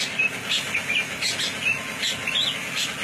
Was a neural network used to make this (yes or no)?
no